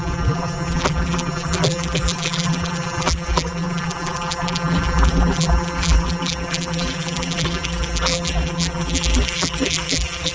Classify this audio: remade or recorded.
remade